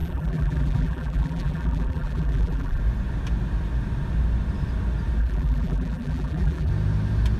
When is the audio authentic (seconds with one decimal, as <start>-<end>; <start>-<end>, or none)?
2.8-5.2; 6.7-7.4